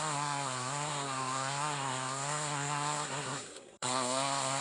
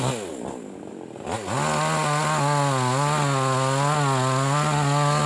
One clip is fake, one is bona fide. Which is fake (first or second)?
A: first